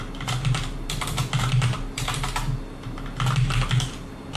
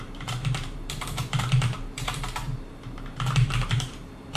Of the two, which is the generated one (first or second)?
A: second